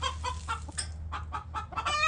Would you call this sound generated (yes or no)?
no